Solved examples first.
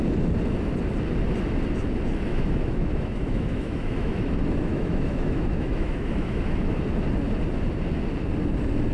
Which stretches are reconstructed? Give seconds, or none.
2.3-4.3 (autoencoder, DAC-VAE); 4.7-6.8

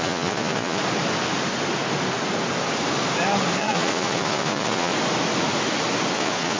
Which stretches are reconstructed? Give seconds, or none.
0.0-0.8 (vocoder, Vocos); 3.6-4.9; 6.1-6.6

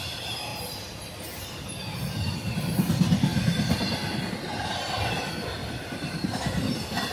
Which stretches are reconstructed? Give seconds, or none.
0.5-1.2 (vocoder, BigVGAN v2); 3.3-3.8; 5.6-7.1

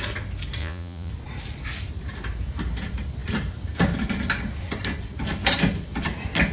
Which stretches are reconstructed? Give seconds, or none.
0.6-1.1 (vocoder, Vocos)

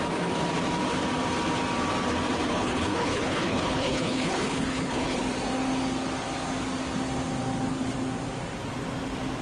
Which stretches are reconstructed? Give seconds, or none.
2.5-5.2 (codec, HILCodec)